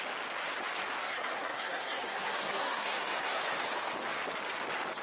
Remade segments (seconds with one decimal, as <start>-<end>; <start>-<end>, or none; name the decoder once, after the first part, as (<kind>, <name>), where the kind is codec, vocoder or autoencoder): 1.0-3.4 (codec, SNAC)